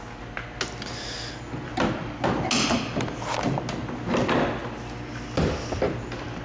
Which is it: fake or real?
real